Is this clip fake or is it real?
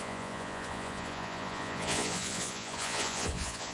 fake